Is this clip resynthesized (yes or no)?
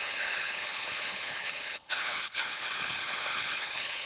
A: yes